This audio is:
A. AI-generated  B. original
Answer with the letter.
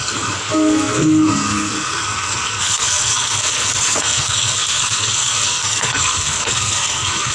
A